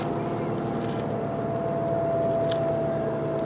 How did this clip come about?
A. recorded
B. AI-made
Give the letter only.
A